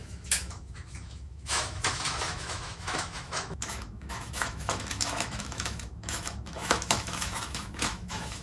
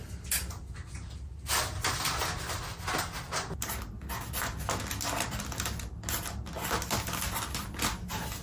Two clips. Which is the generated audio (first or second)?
first